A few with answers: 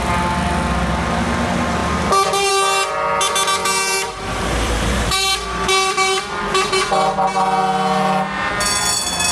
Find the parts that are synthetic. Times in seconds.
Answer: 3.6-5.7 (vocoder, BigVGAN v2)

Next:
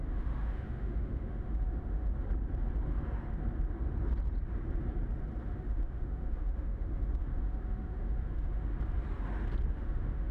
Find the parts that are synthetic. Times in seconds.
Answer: 0.0-2.1 (autoencoder, DAC-VAE); 5.6-8.7; 9.7-10.3

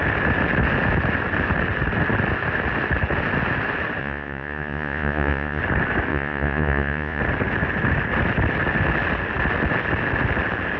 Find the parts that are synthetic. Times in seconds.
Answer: 4.0-5.6 (vocoder, Vocos); 6.1-7.2

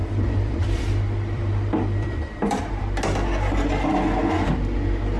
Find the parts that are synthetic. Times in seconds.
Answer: 0.0-2.8 (vocoder, BigVGAN v2)

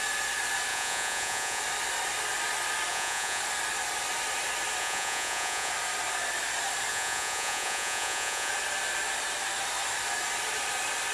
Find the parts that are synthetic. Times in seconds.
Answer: 0.7-1.6 (vocoder, Vocos); 2.9-3.4; 4.8-5.7; 6.9-8.5